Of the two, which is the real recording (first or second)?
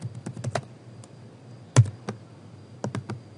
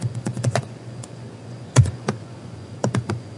first